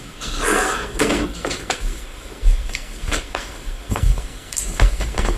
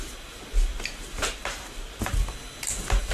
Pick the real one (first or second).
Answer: second